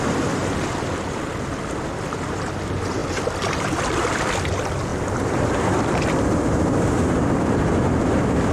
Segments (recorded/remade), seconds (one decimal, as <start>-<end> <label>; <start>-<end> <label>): 0.0-4.9 recorded; 4.9-6.1 remade; 6.1-8.5 recorded